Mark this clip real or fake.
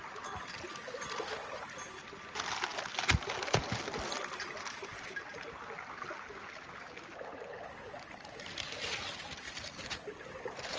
real